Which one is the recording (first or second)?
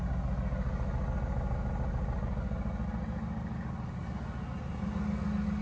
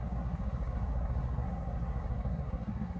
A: first